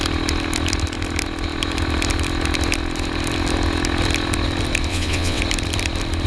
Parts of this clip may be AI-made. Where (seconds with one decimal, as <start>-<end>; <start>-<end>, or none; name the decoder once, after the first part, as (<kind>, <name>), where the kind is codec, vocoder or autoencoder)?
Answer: 4.9-5.4 (vocoder, WaveNeXt)